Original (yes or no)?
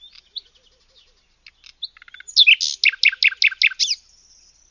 yes